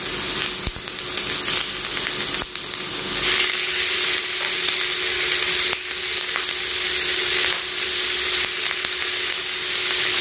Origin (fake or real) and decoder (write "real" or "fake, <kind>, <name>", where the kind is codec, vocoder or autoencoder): real